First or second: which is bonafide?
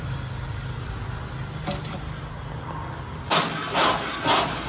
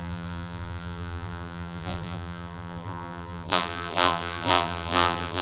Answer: first